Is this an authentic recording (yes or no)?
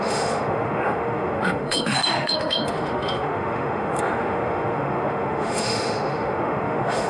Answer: no